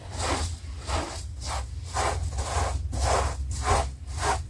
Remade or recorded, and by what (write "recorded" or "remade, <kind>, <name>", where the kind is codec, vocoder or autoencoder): recorded